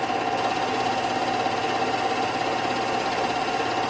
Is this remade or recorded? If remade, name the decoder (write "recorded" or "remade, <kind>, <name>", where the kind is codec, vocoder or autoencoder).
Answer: recorded